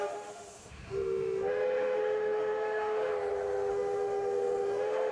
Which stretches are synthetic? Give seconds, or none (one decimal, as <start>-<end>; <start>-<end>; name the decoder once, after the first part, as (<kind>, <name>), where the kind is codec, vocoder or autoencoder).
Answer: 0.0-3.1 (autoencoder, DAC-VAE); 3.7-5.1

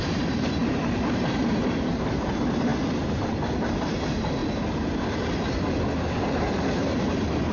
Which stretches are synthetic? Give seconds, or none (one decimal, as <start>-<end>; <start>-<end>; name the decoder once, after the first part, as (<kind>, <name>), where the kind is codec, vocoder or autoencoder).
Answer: 0.0-2.7 (vocoder, BigVGAN v2); 3.7-4.4; 6.0-7.5

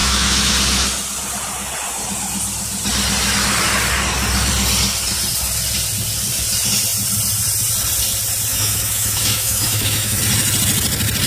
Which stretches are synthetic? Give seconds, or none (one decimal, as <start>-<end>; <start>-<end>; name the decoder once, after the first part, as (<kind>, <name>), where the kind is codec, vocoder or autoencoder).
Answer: 0.0-0.5 (autoencoder, DAC-VAE); 8.5-10.2

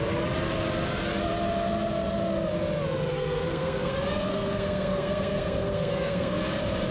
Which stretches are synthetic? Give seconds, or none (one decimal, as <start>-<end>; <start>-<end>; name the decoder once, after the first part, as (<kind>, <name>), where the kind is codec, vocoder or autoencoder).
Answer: 3.1-6.4 (codec, SNAC)

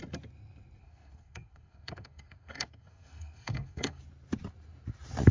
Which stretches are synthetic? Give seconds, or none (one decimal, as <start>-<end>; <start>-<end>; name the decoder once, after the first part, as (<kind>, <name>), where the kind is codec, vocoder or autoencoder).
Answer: 0.8-4.0 (codec, SNAC)

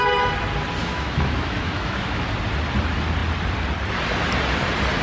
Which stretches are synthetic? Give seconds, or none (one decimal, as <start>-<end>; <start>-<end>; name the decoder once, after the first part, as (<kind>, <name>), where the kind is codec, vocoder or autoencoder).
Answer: 0.8-2.2 (autoencoder, DAC-VAE)

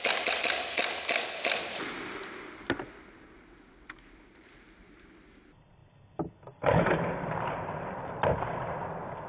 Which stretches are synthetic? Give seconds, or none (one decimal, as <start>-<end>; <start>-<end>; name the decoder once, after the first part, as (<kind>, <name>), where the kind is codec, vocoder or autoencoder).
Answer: 0.0-5.8 (vocoder, BigVGAN v2); 6.9-9.3